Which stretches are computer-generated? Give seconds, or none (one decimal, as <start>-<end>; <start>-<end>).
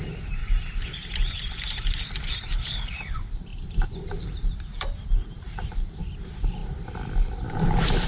0.0-0.4; 2.7-6.6; 7.5-8.1